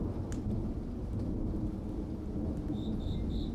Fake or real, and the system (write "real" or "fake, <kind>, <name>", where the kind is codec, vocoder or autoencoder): real